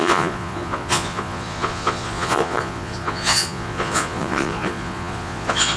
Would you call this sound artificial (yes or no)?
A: yes